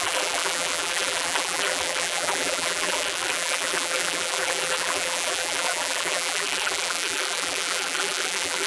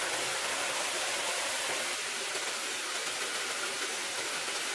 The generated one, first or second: first